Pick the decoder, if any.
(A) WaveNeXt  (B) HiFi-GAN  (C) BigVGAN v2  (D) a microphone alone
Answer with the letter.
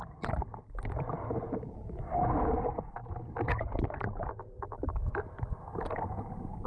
D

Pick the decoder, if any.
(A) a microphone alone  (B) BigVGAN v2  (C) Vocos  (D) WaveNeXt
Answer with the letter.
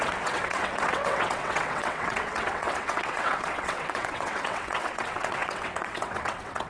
D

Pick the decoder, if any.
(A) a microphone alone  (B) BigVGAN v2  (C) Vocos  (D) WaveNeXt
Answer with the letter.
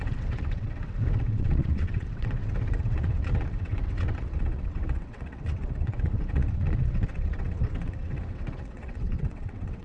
D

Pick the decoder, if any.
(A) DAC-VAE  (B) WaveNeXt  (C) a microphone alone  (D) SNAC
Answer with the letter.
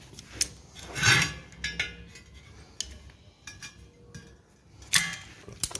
C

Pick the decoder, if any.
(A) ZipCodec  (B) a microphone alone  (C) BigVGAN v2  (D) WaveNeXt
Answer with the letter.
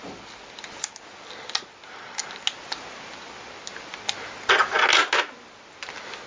B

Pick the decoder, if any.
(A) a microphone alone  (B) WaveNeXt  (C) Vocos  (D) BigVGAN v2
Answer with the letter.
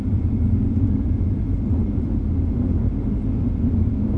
A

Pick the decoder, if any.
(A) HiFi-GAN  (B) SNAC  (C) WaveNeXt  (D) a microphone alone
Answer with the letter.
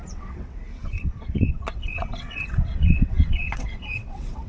C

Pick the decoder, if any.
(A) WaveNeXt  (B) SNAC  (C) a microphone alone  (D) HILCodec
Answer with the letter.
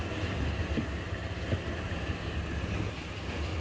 C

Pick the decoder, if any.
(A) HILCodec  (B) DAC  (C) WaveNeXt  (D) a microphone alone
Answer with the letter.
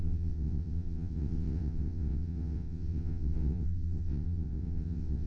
C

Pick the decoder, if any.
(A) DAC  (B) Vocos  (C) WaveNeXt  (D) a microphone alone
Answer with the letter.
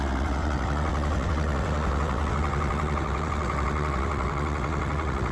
C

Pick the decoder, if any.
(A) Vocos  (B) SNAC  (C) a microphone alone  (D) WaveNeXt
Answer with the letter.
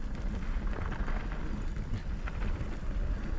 C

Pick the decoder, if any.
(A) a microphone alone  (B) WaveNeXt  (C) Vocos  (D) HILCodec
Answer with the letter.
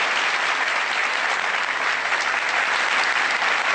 A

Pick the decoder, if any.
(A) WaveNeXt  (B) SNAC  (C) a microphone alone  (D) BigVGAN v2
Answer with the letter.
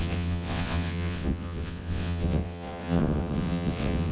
A